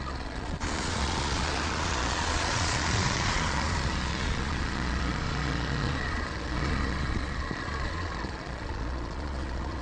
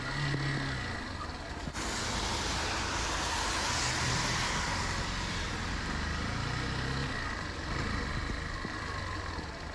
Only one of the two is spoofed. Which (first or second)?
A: first